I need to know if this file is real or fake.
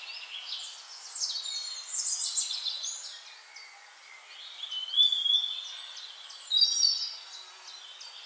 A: real